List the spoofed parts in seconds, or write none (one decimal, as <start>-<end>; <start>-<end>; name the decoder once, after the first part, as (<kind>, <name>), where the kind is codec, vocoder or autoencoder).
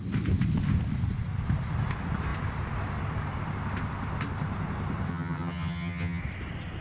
5.1-6.2 (vocoder, HiFi-GAN)